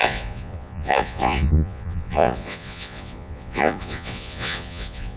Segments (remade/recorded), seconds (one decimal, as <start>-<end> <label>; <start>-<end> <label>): 0.0-5.2 remade